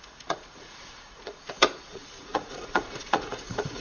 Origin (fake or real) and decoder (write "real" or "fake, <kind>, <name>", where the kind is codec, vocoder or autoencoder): fake, vocoder, Vocos